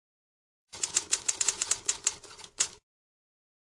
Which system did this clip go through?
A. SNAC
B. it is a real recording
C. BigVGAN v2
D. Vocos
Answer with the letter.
D